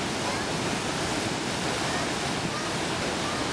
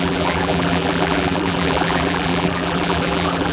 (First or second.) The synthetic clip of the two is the second